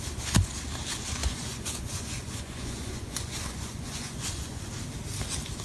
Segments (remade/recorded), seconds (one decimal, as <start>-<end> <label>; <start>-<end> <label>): 0.0-1.2 recorded; 1.2-4.6 remade; 4.6-5.6 recorded